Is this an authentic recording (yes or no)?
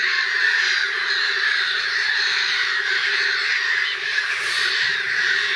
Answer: no